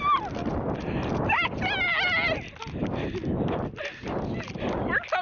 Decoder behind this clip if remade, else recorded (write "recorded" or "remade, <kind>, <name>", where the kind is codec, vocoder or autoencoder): recorded